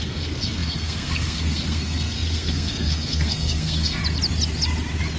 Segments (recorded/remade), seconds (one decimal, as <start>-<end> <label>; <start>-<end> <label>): 0.0-4.0 remade; 4.0-5.2 recorded